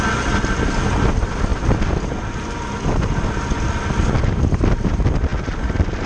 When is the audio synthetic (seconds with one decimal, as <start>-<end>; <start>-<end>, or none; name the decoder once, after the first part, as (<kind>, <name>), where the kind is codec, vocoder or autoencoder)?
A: none